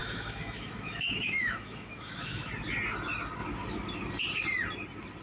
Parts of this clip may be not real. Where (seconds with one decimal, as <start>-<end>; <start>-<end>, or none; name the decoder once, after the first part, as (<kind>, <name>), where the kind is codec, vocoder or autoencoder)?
0.0-2.5 (autoencoder, DAC-VAE)